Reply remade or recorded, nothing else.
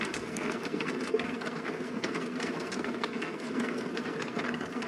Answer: remade